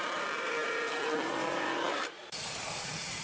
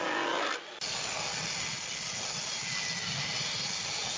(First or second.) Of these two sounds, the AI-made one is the first